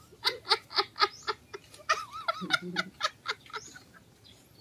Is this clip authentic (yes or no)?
yes